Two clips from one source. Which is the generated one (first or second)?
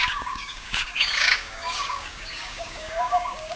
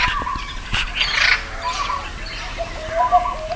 first